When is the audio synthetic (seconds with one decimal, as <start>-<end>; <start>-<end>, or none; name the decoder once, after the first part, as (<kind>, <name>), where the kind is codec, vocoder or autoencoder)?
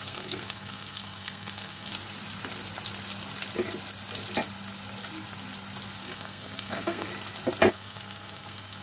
0.0-1.9 (codec, SNAC); 6.0-7.1; 7.7-8.8